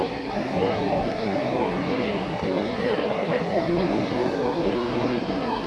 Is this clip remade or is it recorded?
remade